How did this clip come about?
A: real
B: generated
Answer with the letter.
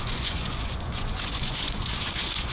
B